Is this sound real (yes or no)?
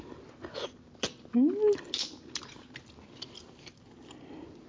yes